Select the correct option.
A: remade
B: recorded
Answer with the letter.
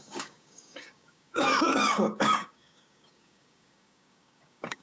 A